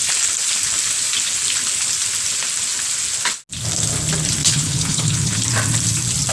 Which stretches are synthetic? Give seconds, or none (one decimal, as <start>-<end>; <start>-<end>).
4.4-5.4